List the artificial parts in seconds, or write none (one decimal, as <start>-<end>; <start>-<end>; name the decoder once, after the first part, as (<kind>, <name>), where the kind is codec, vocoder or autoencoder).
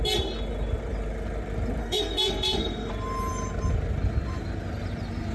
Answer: 1.8-2.9 (codec, SNAC)